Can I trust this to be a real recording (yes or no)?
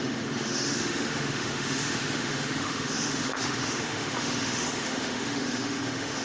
no